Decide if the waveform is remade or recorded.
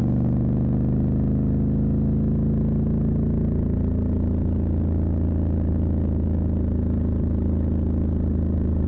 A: recorded